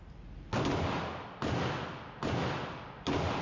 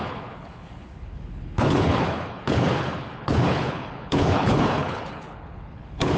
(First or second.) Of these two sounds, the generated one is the second